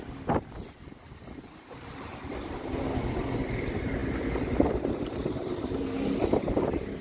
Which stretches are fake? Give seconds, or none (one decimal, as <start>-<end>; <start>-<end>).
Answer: none